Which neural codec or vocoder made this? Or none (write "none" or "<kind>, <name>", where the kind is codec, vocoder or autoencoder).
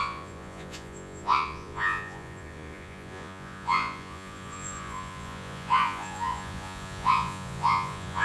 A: vocoder, Vocos